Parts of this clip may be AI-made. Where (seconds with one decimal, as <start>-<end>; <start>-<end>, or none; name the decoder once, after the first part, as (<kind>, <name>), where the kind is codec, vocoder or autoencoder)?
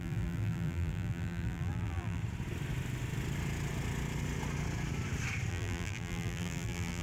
0.0-2.2 (vocoder, BigVGAN v2); 5.5-7.0